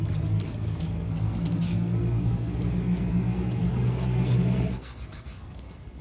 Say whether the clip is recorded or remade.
remade